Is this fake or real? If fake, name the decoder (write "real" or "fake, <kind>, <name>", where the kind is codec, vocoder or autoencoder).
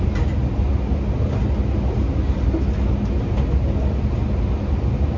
real